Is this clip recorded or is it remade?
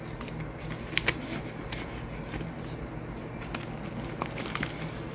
recorded